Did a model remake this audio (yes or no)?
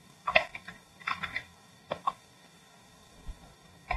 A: yes